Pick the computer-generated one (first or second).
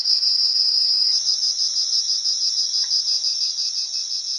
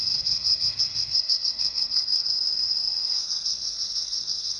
second